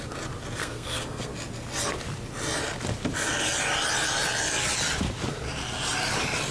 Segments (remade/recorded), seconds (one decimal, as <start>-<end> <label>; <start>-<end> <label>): 0.0-0.6 recorded; 0.6-1.3 remade; 1.3-6.5 recorded